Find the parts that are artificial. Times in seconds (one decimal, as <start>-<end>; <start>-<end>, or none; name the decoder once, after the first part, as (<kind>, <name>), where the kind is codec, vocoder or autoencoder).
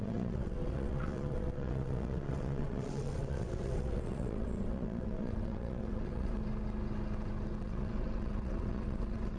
0.0-6.4 (vocoder, WaveNeXt); 7.6-9.4